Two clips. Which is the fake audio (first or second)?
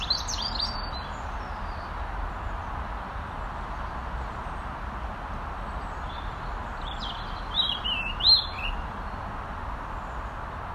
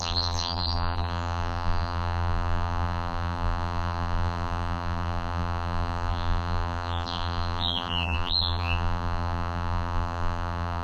second